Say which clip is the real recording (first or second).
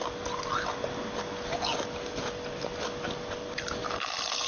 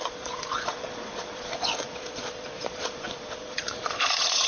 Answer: first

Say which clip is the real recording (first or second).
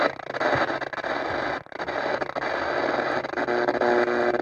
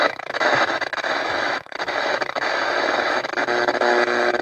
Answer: first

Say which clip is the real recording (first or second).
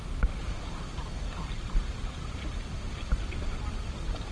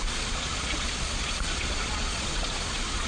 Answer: first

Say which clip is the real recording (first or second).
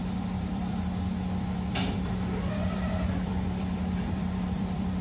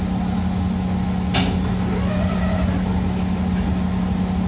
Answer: second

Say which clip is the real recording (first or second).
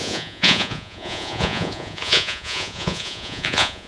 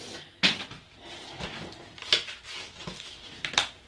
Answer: second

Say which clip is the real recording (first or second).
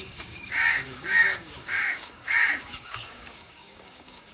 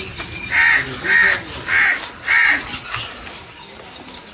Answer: second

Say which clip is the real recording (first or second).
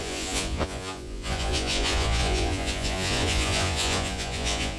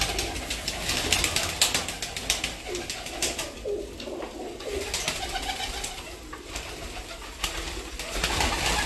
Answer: second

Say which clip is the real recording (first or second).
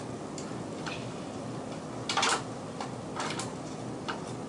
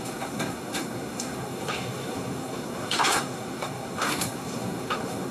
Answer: first